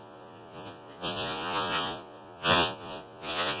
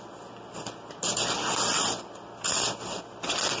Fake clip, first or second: first